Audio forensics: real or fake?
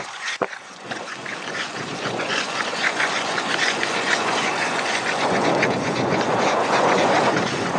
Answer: fake